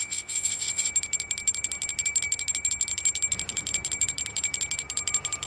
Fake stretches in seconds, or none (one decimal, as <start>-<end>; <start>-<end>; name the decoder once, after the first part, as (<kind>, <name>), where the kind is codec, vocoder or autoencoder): 0.0-0.9 (vocoder, WaveNeXt)

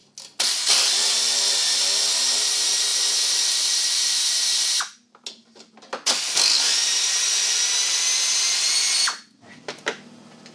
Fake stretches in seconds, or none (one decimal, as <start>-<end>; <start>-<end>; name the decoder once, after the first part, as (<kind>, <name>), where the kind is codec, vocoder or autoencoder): none

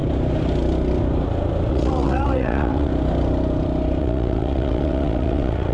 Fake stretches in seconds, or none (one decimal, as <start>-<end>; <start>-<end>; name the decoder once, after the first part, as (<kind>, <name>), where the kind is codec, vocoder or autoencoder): 1.7-2.9 (vocoder, WaveNeXt); 4.0-5.7

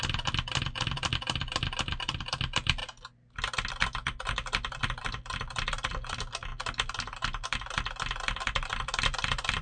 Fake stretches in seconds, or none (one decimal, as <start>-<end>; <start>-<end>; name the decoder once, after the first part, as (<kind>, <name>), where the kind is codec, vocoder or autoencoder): none

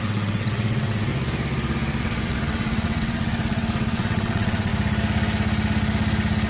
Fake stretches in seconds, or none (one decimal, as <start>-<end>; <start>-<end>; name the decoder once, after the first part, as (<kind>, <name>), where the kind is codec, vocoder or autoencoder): 0.0-1.1 (vocoder, WaveNeXt); 2.0-4.7

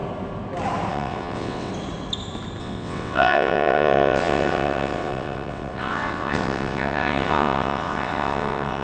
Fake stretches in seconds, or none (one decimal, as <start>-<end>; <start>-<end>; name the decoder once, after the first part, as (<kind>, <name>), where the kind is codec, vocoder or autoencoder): 0.9-1.7 (vocoder, WaveNeXt); 2.6-8.8

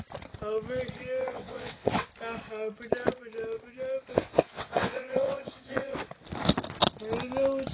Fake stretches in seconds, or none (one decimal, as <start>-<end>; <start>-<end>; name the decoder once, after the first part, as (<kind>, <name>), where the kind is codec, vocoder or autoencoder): 1.3-2.1 (vocoder, WaveNeXt); 4.1-6.0